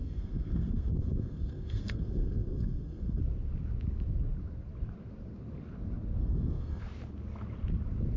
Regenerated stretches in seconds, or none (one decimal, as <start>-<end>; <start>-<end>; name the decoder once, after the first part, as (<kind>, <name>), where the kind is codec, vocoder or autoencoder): 0.0-3.2 (codec, SNAC); 6.2-6.8

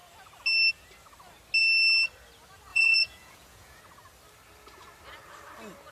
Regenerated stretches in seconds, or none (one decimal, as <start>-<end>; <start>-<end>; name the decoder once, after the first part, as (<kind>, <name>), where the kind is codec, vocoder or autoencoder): 2.7-3.8 (vocoder, Vocos)

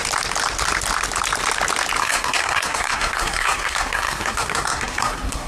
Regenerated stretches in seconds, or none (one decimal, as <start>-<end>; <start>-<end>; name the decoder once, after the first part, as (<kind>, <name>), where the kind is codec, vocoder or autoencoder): 2.0-5.5 (codec, SNAC)

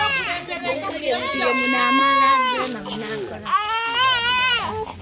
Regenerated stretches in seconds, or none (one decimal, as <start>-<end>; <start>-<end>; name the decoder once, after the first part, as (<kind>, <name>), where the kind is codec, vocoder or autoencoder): none

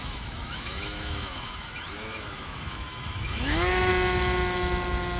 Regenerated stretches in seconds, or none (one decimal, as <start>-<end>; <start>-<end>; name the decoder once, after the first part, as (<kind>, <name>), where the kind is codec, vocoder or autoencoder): 0.0-3.9 (autoencoder, DAC-VAE)

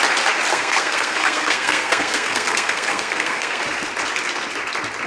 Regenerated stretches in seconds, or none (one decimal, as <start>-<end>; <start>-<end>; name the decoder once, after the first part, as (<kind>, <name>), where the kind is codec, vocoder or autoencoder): 0.5-3.6 (codec, SNAC)

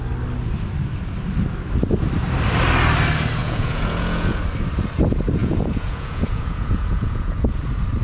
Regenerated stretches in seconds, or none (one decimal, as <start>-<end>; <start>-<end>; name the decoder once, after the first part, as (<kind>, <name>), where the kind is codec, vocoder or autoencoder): 3.4-4.4 (vocoder, Vocos); 5.4-7.6